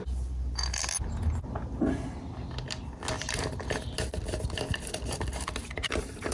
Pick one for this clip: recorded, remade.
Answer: recorded